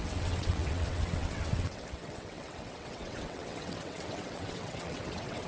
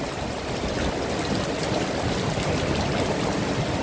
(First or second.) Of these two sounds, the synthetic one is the first